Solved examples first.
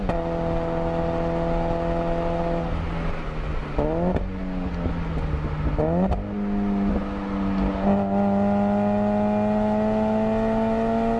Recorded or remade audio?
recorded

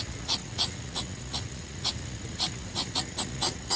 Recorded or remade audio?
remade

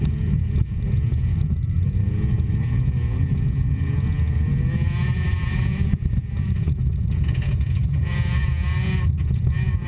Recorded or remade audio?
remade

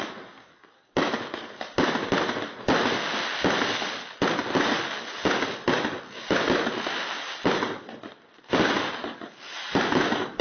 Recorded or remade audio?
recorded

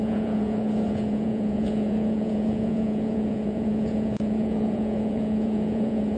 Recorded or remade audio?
remade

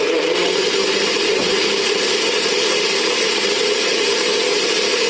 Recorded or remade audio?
recorded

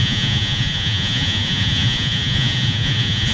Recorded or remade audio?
remade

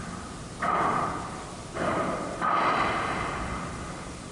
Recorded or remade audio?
recorded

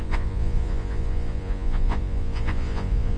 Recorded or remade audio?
remade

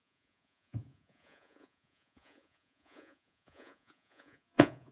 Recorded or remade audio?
remade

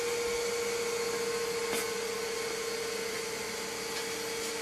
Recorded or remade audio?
recorded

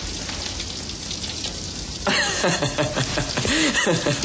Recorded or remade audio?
recorded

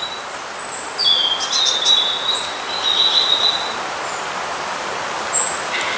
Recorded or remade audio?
recorded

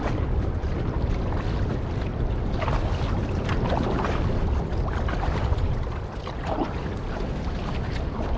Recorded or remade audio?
recorded